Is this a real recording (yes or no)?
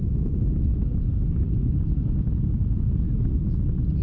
yes